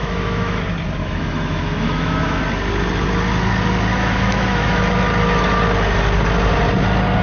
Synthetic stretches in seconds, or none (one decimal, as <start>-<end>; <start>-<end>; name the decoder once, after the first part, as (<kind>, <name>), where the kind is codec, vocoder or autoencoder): 0.0-0.6 (autoencoder, DAC-VAE); 1.0-2.4; 3.9-4.8

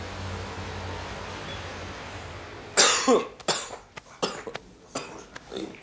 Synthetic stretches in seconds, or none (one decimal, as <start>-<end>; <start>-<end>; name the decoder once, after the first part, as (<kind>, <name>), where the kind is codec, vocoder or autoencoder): none

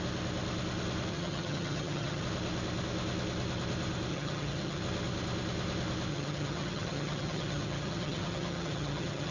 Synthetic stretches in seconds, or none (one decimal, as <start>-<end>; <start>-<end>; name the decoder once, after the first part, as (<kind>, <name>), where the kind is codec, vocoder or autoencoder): 1.1-2.2 (vocoder, HiFi-GAN); 4.1-4.8; 6.1-9.3

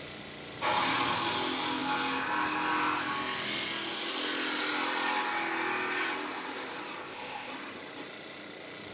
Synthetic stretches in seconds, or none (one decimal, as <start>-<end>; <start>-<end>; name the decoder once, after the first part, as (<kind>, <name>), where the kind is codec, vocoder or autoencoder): 7.0-7.5 (codec, ZipCodec)

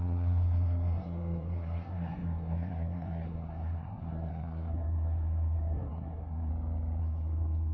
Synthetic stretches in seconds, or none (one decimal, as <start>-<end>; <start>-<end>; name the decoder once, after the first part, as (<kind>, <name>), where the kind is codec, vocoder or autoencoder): 0.0-6.5 (codec, SNAC); 7.0-7.7

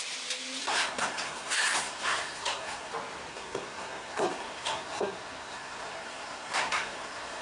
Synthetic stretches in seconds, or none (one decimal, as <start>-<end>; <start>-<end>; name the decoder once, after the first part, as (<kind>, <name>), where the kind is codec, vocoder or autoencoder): 0.6-2.9 (codec, SNAC); 3.3-7.4

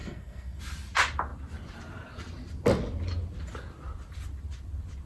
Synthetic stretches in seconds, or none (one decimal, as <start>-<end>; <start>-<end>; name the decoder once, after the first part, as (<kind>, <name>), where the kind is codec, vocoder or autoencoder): 0.0-0.6 (codec, SNAC)